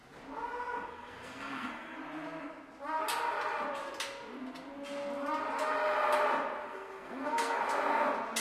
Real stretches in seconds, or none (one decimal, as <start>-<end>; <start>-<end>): 0.0-0.9; 2.0-6.6; 7.6-8.4